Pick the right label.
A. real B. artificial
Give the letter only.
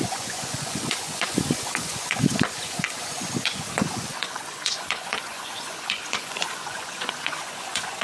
B